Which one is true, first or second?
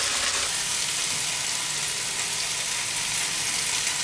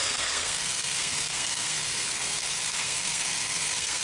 first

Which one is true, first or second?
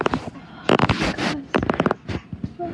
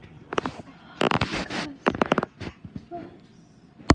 first